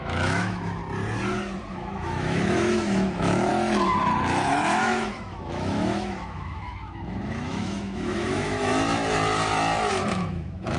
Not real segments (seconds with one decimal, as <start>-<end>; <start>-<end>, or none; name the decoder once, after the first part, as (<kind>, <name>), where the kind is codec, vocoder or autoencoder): 0.0-0.8 (autoencoder, DAC-VAE); 1.7-3.5; 4.2-8.7; 9.9-10.8